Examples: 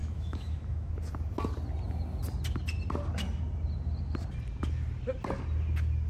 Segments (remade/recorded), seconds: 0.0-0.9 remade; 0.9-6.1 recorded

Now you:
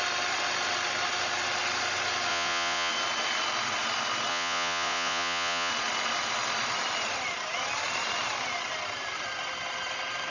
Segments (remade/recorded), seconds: 0.0-2.3 recorded; 2.3-2.9 remade; 2.9-4.3 recorded; 4.3-5.7 remade; 5.7-10.3 recorded

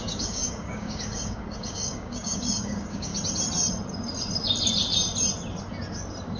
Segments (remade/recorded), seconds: 0.0-3.1 remade; 3.1-6.4 recorded

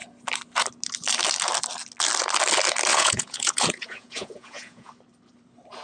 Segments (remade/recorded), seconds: 0.0-2.9 recorded; 2.9-4.9 remade; 4.9-5.8 recorded

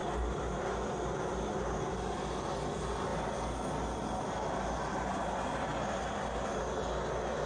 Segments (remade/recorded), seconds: 0.0-7.5 recorded